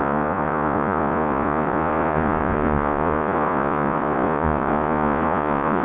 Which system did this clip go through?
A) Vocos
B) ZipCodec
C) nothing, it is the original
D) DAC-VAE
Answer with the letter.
A